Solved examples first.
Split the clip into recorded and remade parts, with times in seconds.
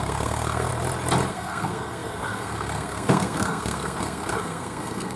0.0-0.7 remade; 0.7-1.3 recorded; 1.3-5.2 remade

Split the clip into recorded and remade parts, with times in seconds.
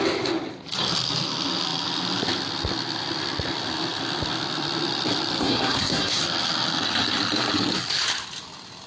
0.0-5.4 recorded; 5.4-6.2 remade; 6.2-8.9 recorded